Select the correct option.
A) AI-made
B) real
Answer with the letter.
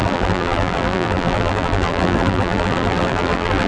A